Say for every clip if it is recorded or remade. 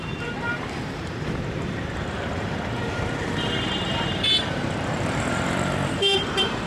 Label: remade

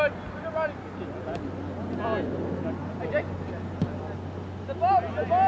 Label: recorded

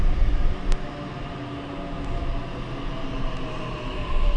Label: recorded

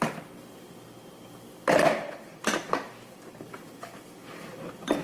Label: remade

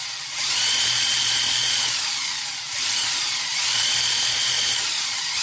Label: remade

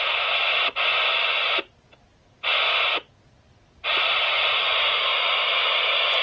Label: recorded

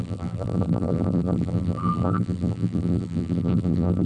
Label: remade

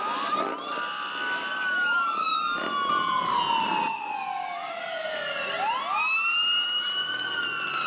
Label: recorded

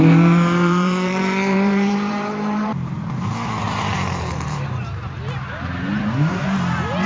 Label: remade